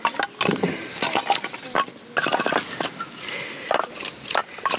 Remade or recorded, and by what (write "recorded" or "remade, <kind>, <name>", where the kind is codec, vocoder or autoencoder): recorded